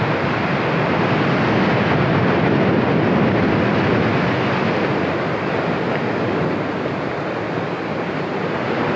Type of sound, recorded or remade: recorded